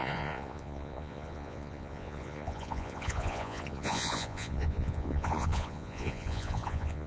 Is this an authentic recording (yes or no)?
no